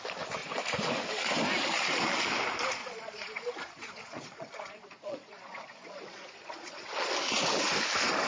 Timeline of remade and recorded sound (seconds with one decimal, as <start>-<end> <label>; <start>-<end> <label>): 0.0-2.8 recorded; 2.8-7.1 remade; 7.1-8.3 recorded